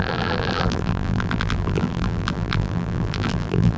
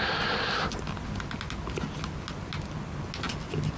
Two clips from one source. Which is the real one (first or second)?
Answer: second